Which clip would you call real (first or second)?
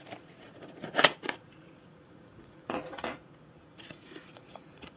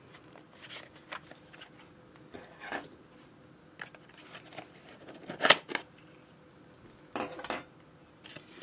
second